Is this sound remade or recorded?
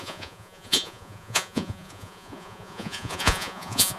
remade